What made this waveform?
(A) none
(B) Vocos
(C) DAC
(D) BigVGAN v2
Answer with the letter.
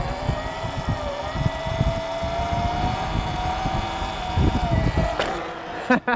A